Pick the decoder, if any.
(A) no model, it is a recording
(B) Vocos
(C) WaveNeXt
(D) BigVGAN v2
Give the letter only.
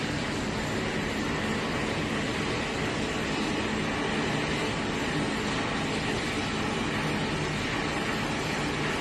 A